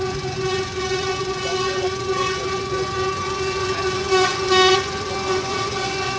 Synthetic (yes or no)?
yes